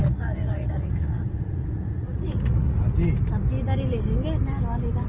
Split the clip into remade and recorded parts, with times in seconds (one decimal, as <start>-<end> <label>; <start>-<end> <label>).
0.0-2.8 remade; 2.8-5.1 recorded

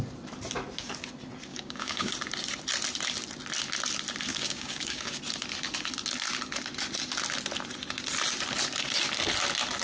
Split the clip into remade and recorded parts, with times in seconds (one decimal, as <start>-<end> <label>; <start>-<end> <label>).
0.0-1.5 recorded; 1.5-2.1 remade; 2.1-4.3 recorded; 4.3-5.2 remade; 5.2-9.8 recorded